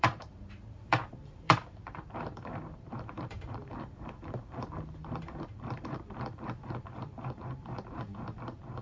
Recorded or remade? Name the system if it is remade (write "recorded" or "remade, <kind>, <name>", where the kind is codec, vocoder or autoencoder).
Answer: remade, vocoder, BigVGAN v2